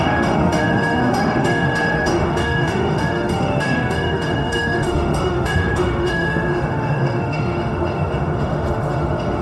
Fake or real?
fake